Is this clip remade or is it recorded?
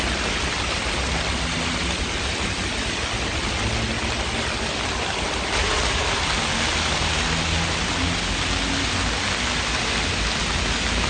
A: recorded